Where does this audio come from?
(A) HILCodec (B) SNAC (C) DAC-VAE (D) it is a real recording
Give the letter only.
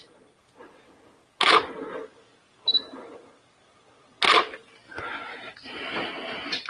D